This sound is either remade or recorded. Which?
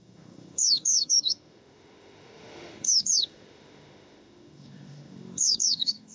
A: remade